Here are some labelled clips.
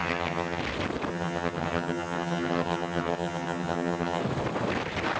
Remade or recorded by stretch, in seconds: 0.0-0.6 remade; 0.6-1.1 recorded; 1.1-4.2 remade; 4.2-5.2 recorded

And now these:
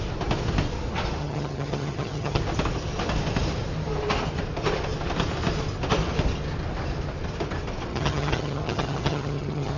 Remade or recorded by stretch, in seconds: 0.0-1.2 recorded; 1.2-2.4 remade; 2.4-7.9 recorded; 7.9-9.8 remade

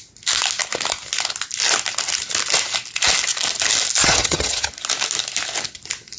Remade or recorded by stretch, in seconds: 0.0-4.0 recorded; 4.0-4.7 remade; 4.7-6.2 recorded

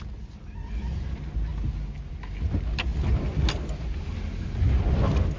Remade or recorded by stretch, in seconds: 0.0-5.4 recorded

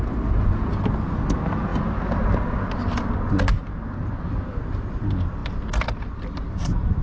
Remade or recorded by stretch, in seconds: 0.0-7.0 recorded

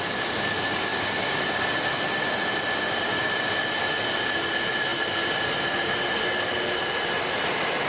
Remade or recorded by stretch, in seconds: 0.0-7.9 recorded